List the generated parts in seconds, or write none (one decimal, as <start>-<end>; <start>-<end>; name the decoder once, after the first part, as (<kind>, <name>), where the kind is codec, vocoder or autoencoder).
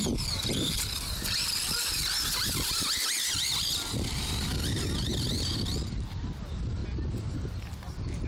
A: 5.1-5.9 (vocoder, BigVGAN v2)